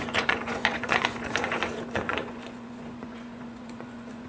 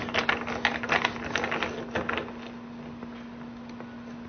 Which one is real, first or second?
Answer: second